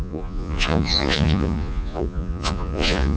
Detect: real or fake fake